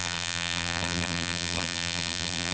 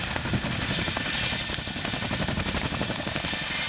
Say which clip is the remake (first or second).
first